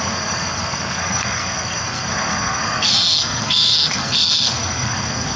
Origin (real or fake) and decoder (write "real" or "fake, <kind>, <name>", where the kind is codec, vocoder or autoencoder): fake, codec, SNAC